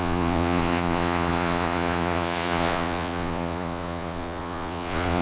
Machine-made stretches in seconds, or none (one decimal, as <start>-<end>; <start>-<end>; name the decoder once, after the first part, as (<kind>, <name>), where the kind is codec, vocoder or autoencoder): 0.0-5.2 (vocoder, Vocos)